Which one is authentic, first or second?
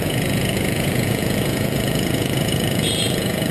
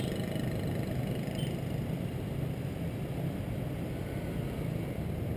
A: second